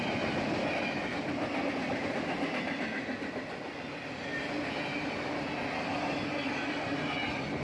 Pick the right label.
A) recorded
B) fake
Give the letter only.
A